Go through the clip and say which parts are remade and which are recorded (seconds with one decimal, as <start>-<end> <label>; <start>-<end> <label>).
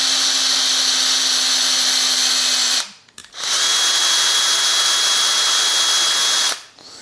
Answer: 0.0-7.0 recorded